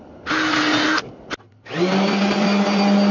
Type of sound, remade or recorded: recorded